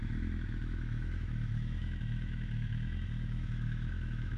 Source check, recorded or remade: remade